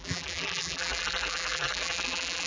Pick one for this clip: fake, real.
fake